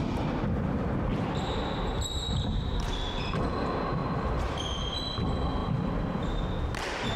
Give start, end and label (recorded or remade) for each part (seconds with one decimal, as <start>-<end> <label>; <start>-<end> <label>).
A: 0.0-1.1 recorded; 1.1-2.9 remade; 2.9-4.0 recorded; 4.0-4.9 remade; 4.9-5.6 recorded; 5.6-6.4 remade; 6.4-7.2 recorded